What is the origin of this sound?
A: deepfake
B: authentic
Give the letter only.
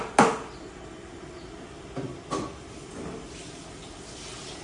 B